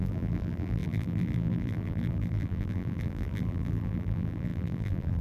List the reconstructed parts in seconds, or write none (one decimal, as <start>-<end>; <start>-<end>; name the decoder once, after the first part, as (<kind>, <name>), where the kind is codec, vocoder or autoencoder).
0.0-5.2 (vocoder, BigVGAN v2)